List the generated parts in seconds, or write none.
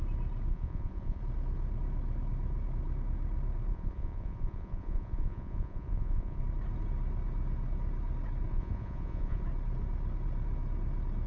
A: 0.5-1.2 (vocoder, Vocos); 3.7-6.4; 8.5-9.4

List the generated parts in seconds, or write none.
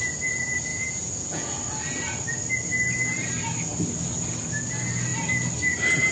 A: 0.7-1.5 (vocoder, Vocos)